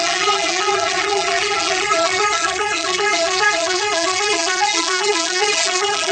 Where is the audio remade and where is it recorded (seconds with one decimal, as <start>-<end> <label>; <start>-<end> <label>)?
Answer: 0.0-6.1 remade